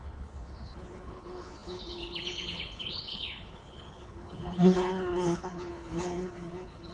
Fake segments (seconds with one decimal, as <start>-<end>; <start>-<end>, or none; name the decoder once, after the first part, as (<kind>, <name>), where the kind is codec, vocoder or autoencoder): 0.0-6.9 (codec, HILCodec)